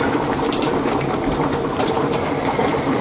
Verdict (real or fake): fake